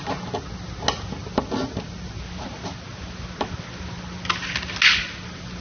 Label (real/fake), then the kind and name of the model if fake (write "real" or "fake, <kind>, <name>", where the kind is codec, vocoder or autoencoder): real